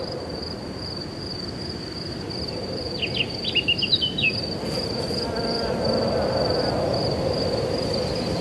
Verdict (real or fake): real